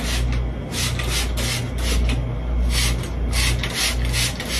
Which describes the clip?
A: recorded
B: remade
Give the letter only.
A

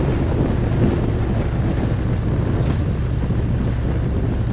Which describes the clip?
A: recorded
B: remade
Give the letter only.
A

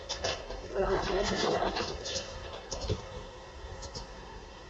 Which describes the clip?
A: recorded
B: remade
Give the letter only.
B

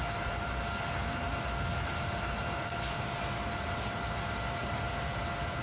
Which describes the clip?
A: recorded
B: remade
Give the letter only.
A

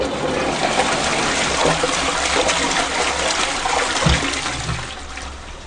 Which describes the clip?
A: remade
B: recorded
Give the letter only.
B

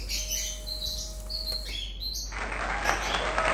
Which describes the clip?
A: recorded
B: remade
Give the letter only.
A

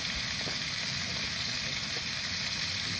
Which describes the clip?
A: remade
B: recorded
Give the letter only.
B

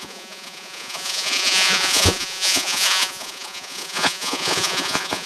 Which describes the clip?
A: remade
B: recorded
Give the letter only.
A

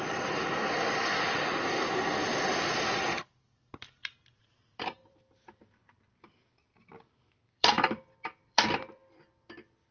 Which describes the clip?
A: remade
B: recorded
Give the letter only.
A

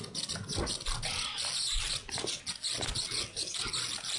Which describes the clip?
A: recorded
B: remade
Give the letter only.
A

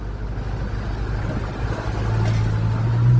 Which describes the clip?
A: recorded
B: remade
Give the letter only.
A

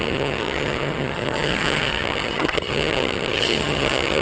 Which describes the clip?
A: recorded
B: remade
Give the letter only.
B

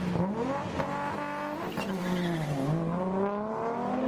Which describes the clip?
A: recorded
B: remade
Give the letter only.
A